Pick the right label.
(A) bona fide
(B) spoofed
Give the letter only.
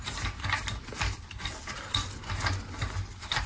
A